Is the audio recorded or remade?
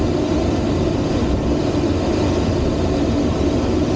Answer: recorded